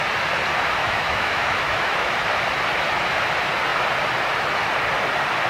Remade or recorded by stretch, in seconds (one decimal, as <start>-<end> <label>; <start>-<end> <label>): 0.0-0.8 recorded; 0.8-2.1 remade; 2.1-5.5 recorded